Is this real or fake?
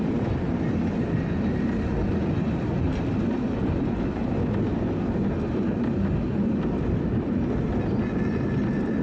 real